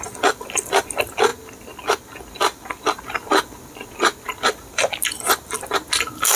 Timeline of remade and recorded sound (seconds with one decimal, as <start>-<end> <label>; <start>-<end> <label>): 0.0-6.4 recorded